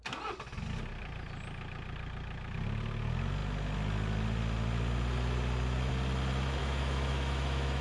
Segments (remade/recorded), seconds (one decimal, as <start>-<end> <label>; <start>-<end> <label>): 0.0-6.6 recorded; 6.6-7.8 remade